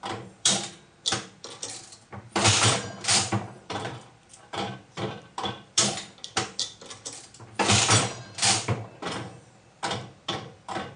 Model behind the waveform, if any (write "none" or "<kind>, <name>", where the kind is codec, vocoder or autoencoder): vocoder, BigVGAN v2